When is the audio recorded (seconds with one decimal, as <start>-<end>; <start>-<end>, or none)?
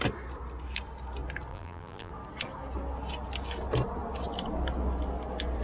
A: 0.0-1.5; 2.1-5.6